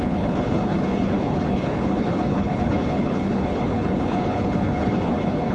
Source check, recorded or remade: remade